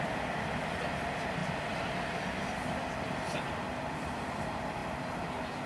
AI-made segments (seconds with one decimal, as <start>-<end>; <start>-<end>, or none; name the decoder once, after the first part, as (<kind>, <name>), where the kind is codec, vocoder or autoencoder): none